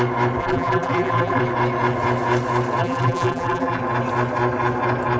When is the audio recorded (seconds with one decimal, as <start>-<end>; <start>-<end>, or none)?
0.0-0.4; 1.4-2.8; 3.8-5.2